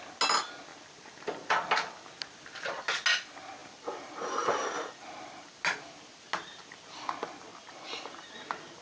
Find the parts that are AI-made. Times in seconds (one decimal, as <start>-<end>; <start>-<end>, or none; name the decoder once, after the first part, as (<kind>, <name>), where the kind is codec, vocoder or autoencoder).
3.6-5.5 (vocoder, BigVGAN v2); 7.5-8.8